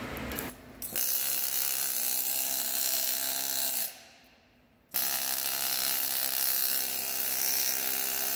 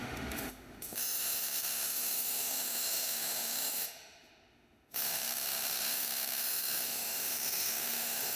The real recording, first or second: first